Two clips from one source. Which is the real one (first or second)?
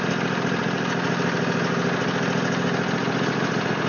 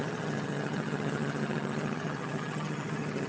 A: first